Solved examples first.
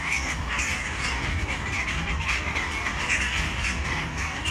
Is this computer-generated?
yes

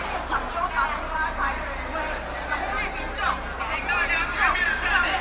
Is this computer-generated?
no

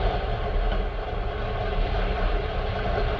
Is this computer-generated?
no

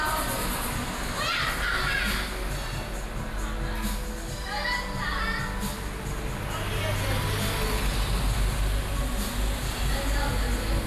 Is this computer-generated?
no